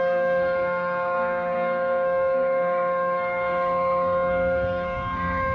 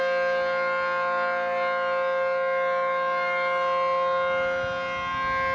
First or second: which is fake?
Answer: first